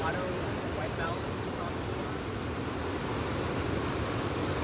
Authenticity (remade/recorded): recorded